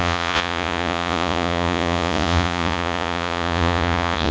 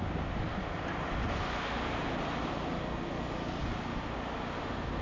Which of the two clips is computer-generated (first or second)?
first